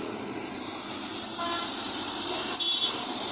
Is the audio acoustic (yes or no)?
yes